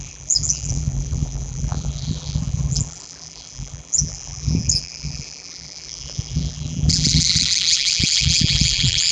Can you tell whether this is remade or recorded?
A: remade